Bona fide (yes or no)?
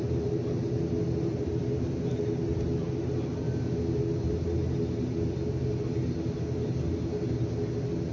yes